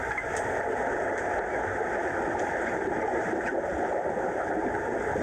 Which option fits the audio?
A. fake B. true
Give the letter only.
B